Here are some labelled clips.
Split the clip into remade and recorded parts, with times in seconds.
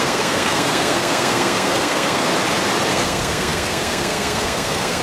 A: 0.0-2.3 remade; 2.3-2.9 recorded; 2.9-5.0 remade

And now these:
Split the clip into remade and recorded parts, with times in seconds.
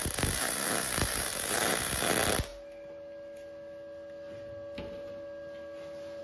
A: 0.0-2.1 remade; 2.1-6.2 recorded